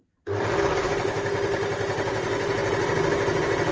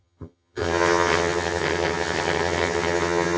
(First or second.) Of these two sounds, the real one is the first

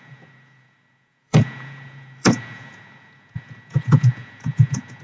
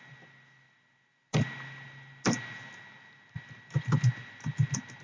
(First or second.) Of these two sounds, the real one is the second